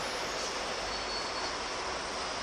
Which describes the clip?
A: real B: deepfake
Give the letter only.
A